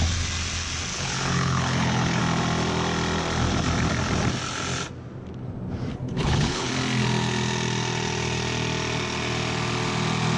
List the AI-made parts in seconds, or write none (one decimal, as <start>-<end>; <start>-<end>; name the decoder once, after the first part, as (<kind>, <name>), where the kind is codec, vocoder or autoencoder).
0.9-2.2 (codec, HILCodec); 5.9-6.7